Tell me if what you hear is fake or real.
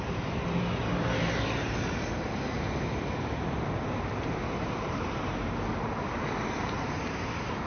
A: fake